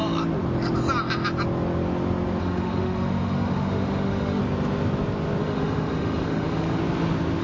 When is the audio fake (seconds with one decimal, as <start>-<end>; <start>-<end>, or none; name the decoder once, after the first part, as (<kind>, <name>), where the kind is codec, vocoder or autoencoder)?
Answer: 2.4-4.4 (autoencoder, DAC-VAE); 5.4-6.8